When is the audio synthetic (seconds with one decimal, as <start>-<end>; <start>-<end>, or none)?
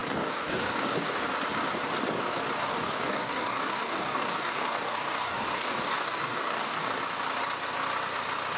0.0-1.3; 2.7-7.0